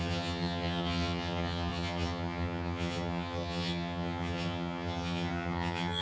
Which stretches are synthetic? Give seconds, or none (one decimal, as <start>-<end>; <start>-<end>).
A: 0.0-6.0